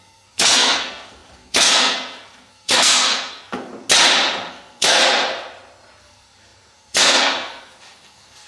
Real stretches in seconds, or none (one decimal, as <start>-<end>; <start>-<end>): 3.7-4.5; 5.0-6.0

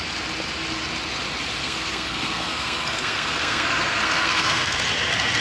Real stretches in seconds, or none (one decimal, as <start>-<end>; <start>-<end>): 0.0-1.6; 4.8-5.4

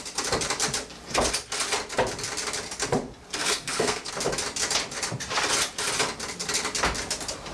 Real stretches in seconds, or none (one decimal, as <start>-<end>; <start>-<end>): 0.0-3.4; 4.1-7.5

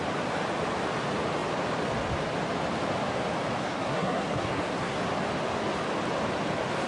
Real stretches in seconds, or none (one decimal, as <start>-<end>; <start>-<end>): 0.0-3.6; 5.0-6.9

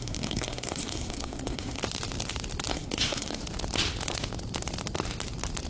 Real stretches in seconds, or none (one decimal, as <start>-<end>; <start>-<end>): 1.8-2.7; 3.4-5.7

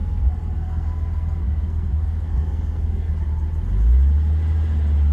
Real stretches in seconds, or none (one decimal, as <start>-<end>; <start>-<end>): 3.1-5.1

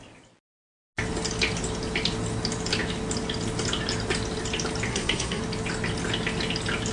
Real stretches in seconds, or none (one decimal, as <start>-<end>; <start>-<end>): 0.0-4.9; 5.4-6.9